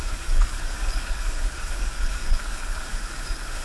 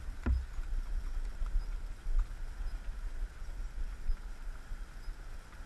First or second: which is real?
second